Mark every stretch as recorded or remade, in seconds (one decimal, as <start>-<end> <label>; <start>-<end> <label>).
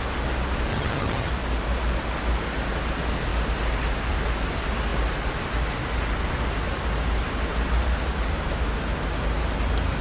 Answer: 0.0-0.7 recorded; 0.7-1.3 remade; 1.3-10.0 recorded